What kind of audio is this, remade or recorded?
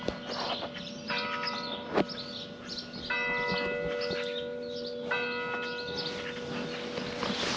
recorded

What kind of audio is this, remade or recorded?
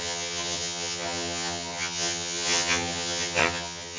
remade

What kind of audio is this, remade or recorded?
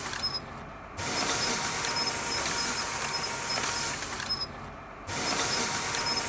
recorded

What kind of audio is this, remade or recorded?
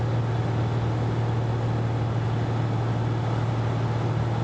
recorded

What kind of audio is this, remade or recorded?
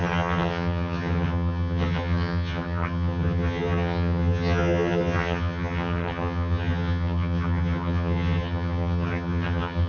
remade